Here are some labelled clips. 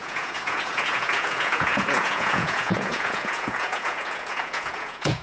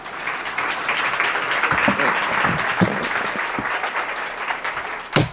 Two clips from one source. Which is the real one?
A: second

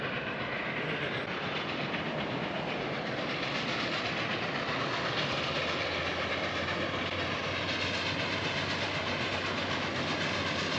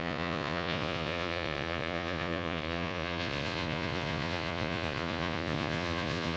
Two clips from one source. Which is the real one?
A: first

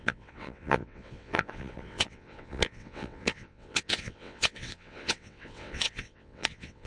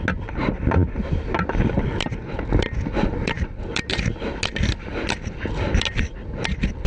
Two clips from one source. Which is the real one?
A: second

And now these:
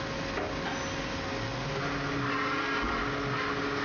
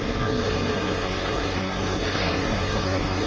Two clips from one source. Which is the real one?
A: first